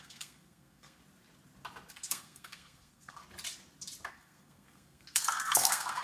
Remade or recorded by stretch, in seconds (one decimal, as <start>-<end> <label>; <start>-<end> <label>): 0.0-1.0 remade; 1.0-1.9 recorded; 1.9-3.2 remade; 3.2-4.1 recorded; 4.1-6.0 remade